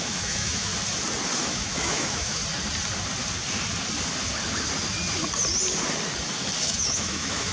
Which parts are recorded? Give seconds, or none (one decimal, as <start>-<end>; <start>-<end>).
0.7-1.4; 2.4-6.6